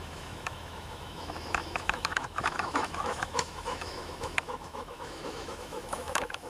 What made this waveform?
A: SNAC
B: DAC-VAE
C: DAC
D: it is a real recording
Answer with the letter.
B